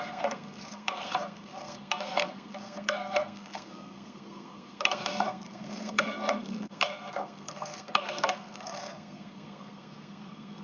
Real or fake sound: fake